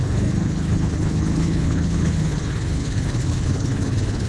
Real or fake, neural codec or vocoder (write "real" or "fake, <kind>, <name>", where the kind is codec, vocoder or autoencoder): fake, codec, HILCodec